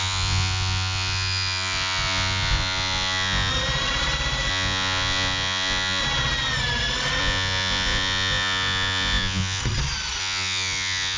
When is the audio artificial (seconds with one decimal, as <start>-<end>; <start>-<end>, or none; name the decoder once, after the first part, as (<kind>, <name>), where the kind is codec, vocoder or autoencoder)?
0.0-3.5 (vocoder, Vocos); 4.5-6.0; 7.2-9.6; 10.2-11.2

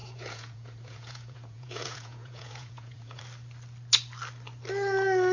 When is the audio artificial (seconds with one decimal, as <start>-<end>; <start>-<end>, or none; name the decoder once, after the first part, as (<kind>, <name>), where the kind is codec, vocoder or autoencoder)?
0.0-3.2 (vocoder, Vocos)